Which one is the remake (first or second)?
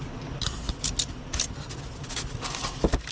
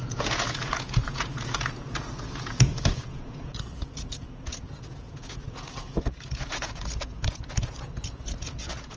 second